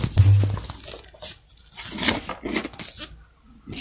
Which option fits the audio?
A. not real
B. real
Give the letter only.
B